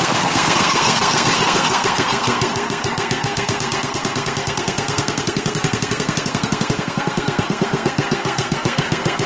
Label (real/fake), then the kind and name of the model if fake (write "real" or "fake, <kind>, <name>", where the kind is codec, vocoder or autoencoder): fake, codec, SNAC